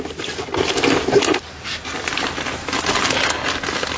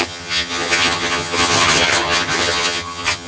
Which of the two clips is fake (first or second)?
second